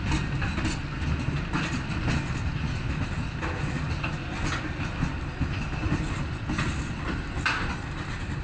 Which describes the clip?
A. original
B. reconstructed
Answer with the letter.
A